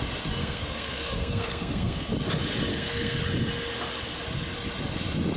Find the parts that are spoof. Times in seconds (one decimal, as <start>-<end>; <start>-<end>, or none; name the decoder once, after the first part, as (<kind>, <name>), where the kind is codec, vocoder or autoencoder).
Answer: 0.4-2.1 (codec, SNAC); 2.7-3.2